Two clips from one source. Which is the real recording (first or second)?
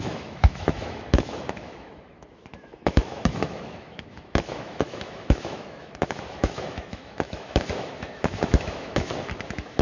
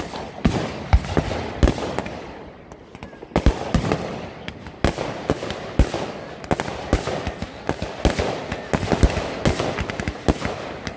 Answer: second